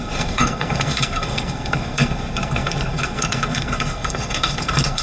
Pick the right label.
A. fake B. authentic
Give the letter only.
A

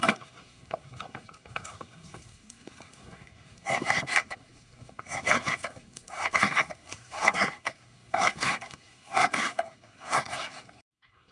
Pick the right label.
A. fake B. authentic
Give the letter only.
A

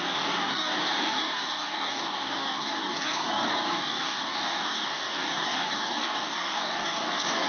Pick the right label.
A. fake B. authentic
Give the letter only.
A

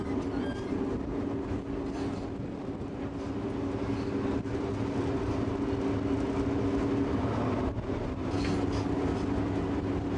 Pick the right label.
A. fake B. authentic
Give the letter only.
B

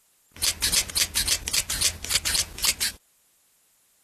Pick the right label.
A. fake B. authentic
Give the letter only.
B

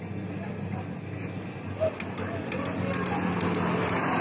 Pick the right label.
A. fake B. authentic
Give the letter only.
B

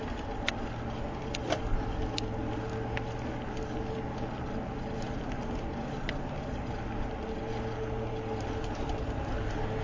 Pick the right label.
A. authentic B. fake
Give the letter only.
A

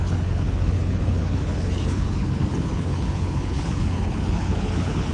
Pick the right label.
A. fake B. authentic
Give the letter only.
A